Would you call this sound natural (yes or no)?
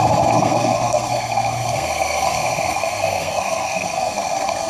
no